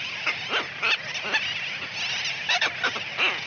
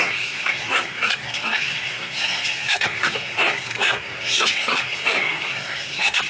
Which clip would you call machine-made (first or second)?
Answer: second